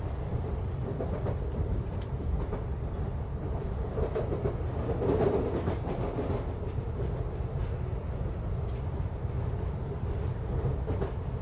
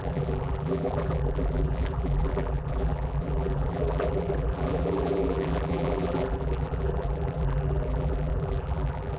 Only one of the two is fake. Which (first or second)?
second